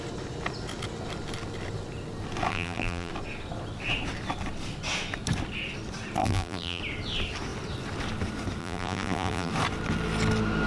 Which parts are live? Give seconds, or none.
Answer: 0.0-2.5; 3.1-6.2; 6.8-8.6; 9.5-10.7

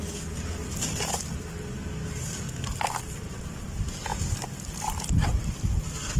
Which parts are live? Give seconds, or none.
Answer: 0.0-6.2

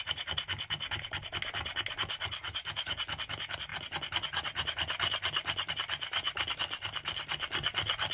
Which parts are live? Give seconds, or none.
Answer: 0.0-8.1